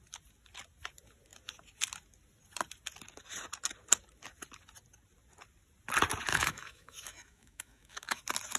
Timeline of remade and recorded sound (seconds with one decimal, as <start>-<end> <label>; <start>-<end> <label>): 0.0-6.3 recorded; 6.3-8.2 remade; 8.2-8.6 recorded